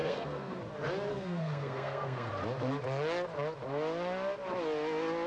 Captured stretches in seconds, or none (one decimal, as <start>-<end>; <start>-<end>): 0.6-1.1; 2.3-5.3